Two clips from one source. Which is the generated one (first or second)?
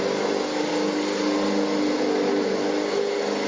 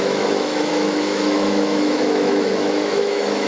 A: second